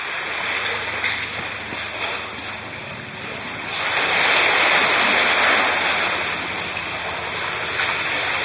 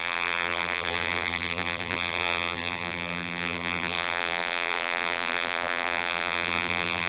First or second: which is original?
first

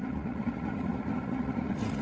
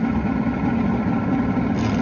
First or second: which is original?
second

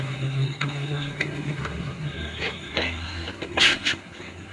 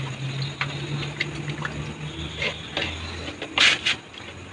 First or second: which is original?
second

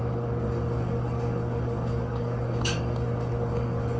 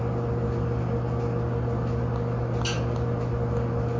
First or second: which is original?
second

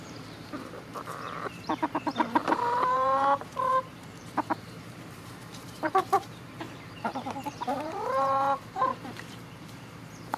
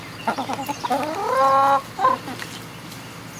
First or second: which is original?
second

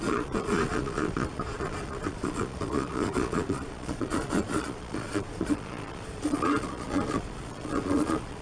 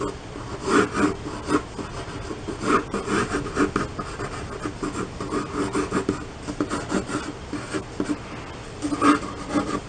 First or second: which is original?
second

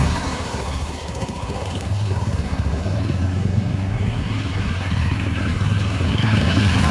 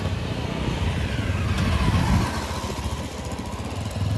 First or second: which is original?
second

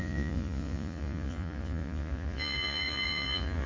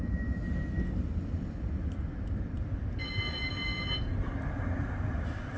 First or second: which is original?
second